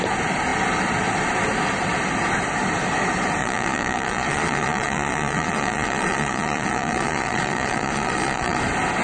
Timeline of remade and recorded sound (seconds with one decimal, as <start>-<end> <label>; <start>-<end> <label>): 0.0-3.4 recorded; 3.4-8.6 remade; 8.6-9.0 recorded